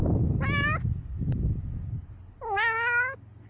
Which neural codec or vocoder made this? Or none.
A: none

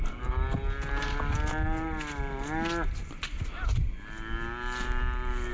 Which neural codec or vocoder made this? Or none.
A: none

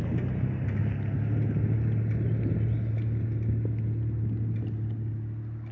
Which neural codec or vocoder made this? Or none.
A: none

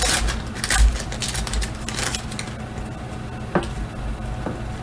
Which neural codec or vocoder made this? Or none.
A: none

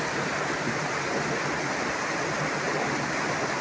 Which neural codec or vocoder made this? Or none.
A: none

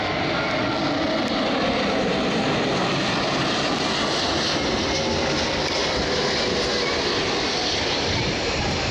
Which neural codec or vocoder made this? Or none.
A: none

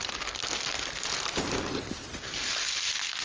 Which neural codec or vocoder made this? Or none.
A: none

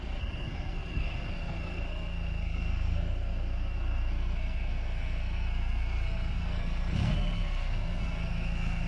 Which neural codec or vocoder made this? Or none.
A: codec, SNAC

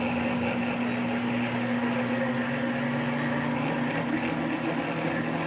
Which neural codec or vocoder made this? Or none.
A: none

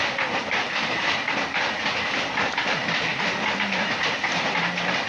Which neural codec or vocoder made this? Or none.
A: none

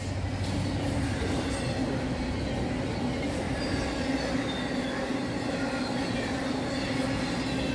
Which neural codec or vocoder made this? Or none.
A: none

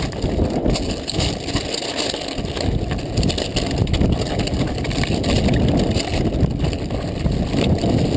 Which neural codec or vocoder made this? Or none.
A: none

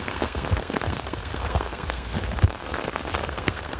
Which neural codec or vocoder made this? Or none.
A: codec, SNAC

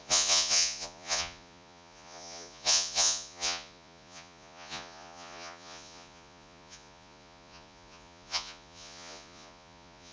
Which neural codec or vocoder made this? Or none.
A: vocoder, Vocos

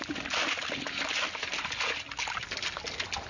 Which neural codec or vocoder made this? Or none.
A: none